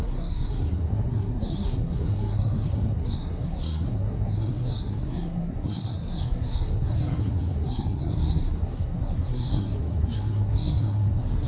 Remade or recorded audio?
remade